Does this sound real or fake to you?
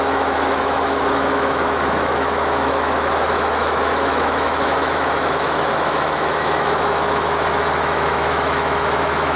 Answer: fake